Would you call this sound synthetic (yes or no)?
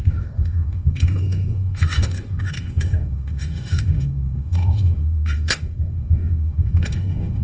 yes